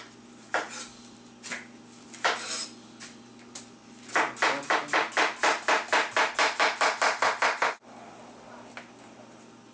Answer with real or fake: real